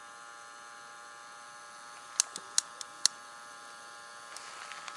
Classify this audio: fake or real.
real